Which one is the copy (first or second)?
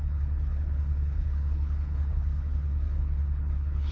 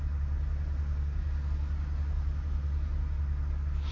first